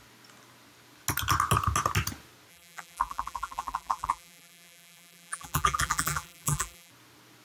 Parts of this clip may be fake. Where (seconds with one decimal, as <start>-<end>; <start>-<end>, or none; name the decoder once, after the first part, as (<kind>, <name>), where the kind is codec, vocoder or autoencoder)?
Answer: 2.5-6.9 (vocoder, BigVGAN v2)